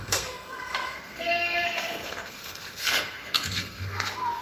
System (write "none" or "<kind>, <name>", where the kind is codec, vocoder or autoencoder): codec, SNAC